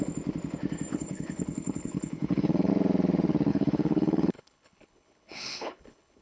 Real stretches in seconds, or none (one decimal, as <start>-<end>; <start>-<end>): 0.0-0.9; 2.7-3.5

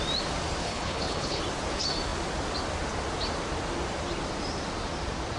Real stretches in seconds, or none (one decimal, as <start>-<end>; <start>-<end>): 0.0-0.6; 1.4-5.4

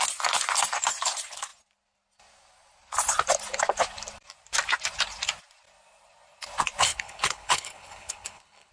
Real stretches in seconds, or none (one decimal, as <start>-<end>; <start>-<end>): 0.0-6.9

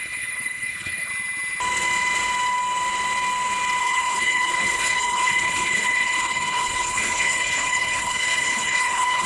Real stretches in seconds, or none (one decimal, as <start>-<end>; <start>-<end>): 1.1-3.8

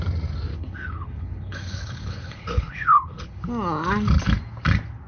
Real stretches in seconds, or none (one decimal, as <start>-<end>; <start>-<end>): 0.0-0.5; 3.4-5.1